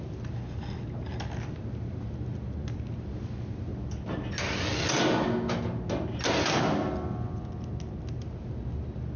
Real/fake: real